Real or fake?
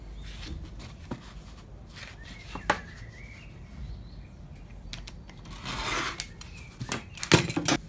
real